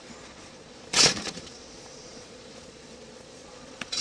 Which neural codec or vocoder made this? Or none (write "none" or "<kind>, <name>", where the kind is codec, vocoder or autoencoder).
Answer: vocoder, Vocos